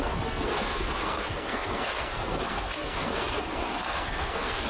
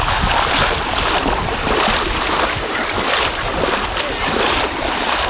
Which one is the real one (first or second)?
second